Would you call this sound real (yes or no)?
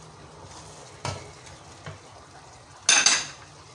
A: yes